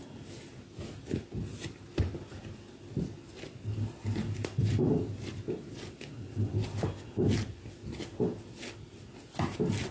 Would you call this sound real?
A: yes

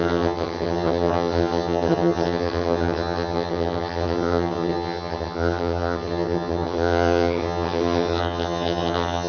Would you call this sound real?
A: no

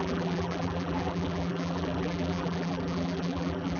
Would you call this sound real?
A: no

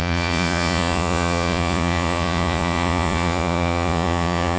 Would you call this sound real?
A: no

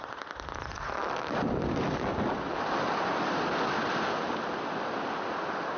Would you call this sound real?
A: yes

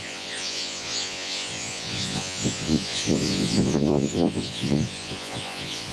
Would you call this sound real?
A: no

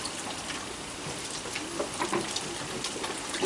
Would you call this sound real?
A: yes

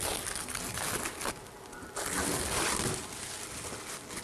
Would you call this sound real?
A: yes